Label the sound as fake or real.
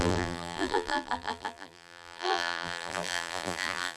fake